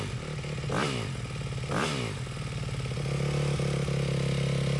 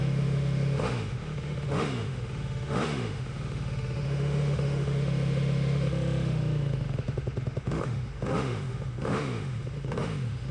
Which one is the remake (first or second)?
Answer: second